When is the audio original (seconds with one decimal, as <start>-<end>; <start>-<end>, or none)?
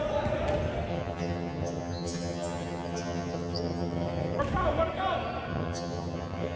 0.0-0.9; 4.4-5.5